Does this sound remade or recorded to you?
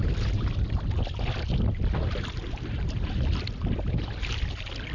recorded